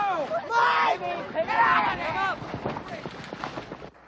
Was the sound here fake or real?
real